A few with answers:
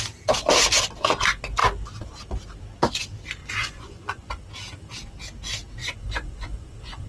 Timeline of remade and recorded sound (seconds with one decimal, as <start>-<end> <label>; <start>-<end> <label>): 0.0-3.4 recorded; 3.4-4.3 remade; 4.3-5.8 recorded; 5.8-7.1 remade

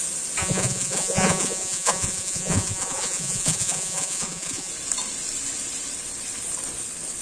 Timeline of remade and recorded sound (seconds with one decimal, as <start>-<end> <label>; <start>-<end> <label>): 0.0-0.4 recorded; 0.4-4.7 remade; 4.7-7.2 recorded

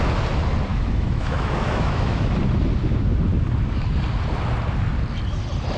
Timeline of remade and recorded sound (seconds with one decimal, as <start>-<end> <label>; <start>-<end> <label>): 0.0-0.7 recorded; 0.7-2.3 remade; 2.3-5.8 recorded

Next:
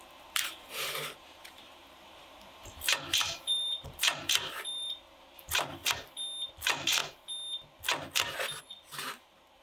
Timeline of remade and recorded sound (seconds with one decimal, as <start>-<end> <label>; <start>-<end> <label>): 0.0-5.8 remade; 5.8-6.5 recorded; 6.5-7.0 remade; 7.0-8.6 recorded; 8.6-9.6 remade

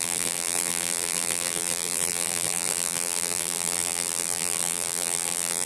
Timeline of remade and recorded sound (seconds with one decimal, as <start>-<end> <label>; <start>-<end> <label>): 0.0-5.7 remade

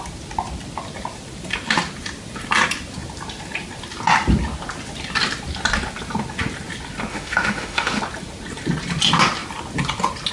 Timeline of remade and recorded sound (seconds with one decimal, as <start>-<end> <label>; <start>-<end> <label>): 0.0-7.1 recorded; 7.1-8.0 remade; 8.0-10.3 recorded